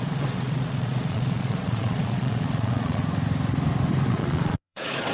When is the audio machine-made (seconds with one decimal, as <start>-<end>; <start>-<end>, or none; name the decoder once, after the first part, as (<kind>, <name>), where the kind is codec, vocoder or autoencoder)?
0.0-3.0 (vocoder, Vocos); 4.1-5.1